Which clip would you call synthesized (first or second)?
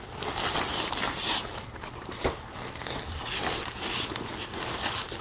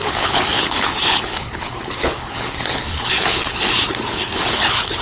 second